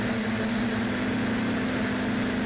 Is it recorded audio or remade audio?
recorded